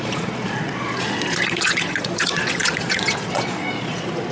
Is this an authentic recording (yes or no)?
no